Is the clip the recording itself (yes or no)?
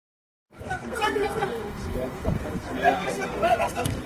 no